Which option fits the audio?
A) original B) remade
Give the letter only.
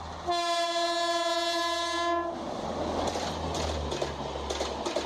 A